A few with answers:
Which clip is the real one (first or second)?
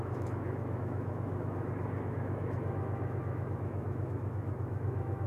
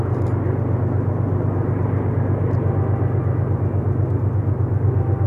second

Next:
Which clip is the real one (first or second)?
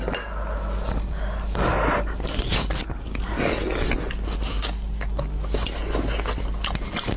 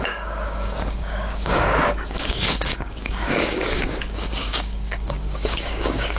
first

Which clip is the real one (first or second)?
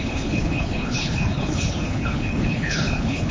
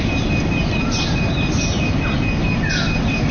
second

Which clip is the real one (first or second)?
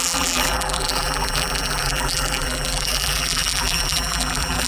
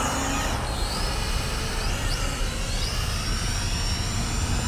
second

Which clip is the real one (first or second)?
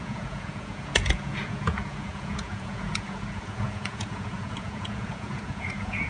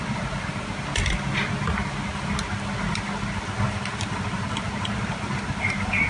second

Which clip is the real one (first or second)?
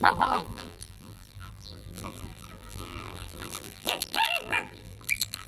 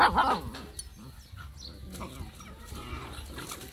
second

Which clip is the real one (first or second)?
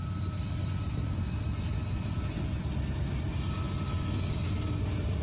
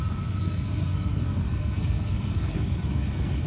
first